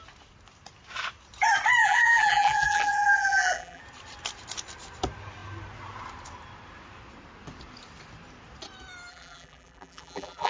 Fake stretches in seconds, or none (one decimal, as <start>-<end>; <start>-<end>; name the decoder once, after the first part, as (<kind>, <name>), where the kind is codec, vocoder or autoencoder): 1.8-3.8 (vocoder, BigVGAN v2); 9.1-10.5